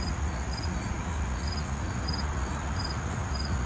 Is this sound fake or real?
fake